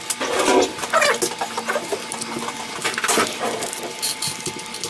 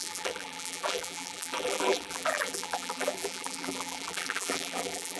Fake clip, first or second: second